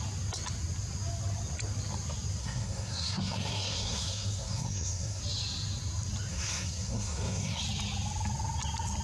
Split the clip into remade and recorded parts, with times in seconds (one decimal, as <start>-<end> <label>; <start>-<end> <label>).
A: 0.0-2.4 recorded; 2.4-5.2 remade; 5.2-6.3 recorded; 6.3-7.6 remade; 7.6-9.0 recorded